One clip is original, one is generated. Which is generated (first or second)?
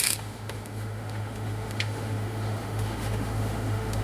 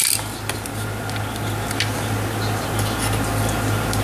first